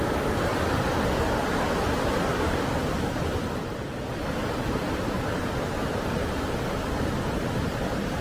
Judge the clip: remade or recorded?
remade